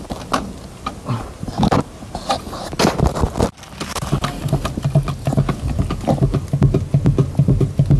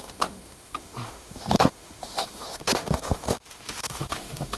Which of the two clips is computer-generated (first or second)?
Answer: second